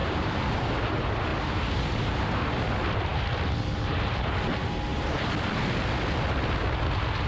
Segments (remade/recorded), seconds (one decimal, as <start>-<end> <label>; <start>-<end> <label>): 0.0-0.8 remade; 0.8-1.3 recorded; 1.3-2.4 remade; 2.4-7.3 recorded